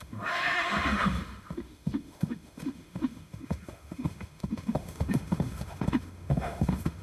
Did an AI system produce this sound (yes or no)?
yes